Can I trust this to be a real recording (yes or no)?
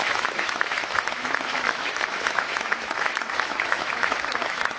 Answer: no